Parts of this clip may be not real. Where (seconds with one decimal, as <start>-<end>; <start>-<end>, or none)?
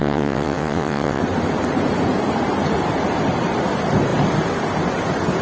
0.0-1.2